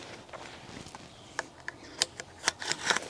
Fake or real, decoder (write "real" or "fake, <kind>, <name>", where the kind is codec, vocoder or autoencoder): real